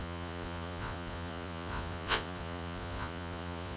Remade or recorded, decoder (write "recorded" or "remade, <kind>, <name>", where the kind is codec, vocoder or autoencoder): remade, vocoder, Vocos